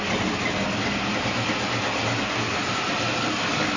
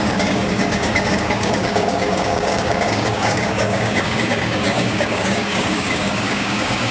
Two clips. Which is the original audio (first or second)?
first